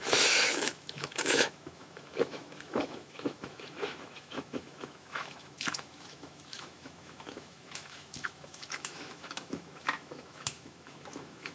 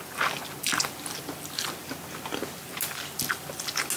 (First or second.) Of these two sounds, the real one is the second